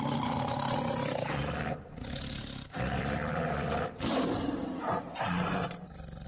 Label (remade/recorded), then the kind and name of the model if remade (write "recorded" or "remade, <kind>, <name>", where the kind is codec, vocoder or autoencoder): recorded